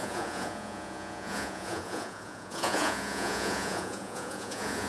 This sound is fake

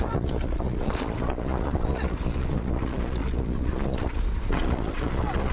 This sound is fake